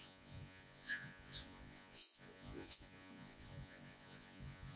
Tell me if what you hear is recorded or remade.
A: remade